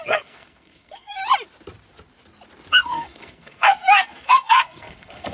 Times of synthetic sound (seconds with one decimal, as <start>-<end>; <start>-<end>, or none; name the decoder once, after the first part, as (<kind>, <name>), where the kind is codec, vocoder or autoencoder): 0.0-1.2 (codec, SNAC); 2.7-5.3